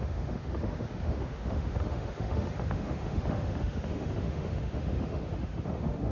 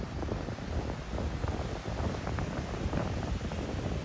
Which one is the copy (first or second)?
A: first